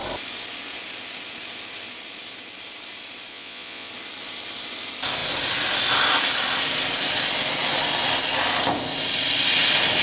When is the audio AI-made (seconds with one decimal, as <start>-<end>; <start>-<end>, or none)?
3.3-3.9

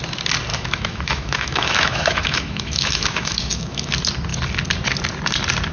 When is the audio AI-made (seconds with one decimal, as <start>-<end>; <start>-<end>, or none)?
0.5-3.9

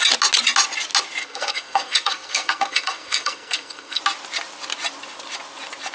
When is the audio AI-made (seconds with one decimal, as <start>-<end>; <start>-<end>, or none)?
1.2-4.0

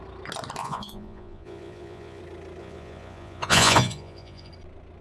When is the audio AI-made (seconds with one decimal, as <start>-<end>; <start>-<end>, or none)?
0.6-2.2; 2.6-4.5

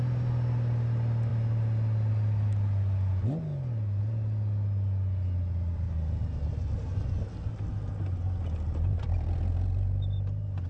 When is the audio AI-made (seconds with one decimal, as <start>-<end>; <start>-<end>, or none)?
none

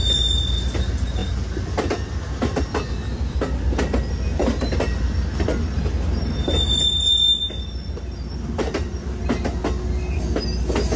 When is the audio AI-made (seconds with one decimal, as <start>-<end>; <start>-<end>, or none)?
none